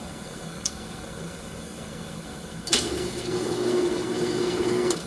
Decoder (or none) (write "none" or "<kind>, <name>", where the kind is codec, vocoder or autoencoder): codec, SNAC